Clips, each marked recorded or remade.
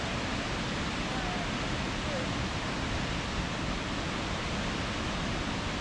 recorded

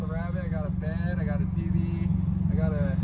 recorded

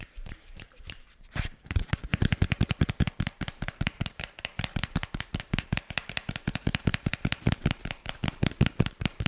remade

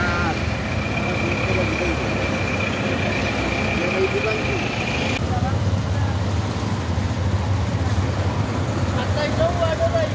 recorded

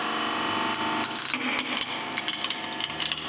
recorded